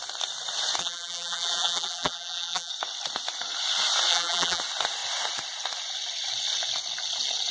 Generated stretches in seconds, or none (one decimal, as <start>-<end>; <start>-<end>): 0.8-2.7; 4.1-4.6